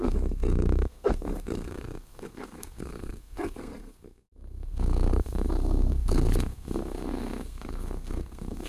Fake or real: fake